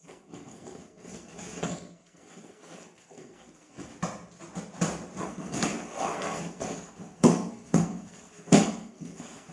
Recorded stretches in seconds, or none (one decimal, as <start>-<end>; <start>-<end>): 3.9-5.2